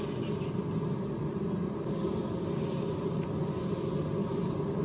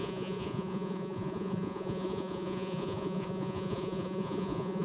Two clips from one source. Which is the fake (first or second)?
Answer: second